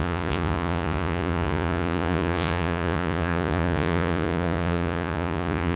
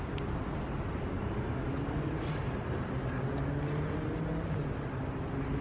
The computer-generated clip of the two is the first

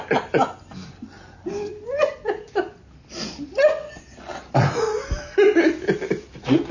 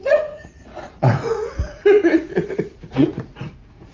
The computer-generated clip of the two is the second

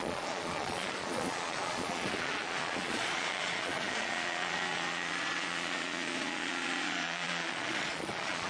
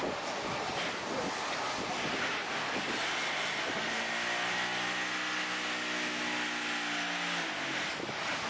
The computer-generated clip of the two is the first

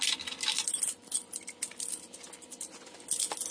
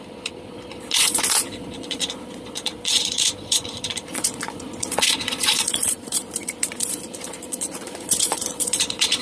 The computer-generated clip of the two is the second